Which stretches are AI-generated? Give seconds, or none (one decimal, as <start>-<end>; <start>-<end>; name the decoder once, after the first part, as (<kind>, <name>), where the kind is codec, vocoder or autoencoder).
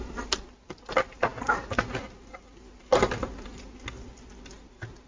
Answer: none